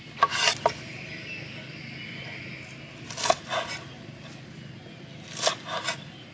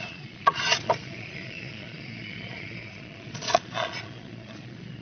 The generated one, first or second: second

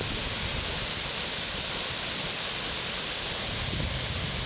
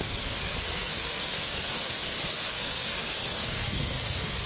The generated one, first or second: second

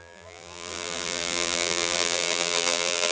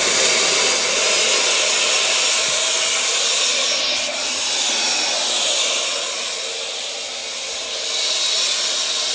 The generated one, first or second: first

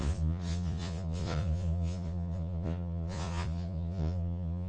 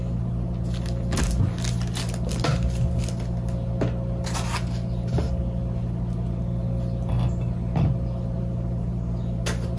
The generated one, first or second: first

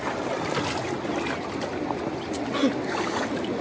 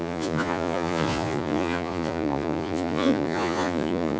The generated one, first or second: second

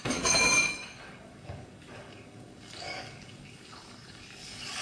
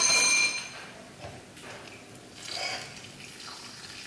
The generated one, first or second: first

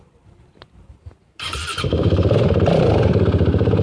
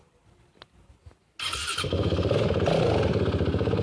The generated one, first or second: first